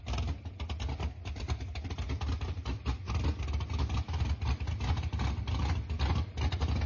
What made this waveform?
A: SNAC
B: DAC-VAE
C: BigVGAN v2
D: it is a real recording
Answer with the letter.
D